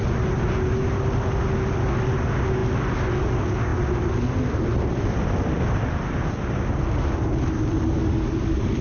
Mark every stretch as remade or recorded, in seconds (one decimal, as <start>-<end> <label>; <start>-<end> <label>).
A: 0.0-8.0 recorded; 8.0-8.8 remade